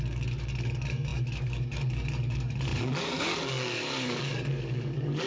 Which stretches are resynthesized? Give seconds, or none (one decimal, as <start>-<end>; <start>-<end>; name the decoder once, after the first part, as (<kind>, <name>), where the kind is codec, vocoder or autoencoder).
0.0-5.3 (codec, DAC)